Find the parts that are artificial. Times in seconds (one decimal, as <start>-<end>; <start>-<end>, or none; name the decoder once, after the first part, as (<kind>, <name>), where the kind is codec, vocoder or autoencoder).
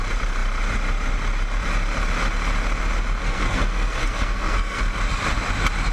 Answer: 3.2-4.8 (codec, SNAC)